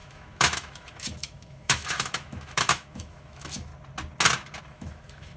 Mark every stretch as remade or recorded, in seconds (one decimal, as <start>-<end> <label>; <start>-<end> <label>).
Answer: 0.0-3.7 remade; 3.7-4.6 recorded; 4.6-5.4 remade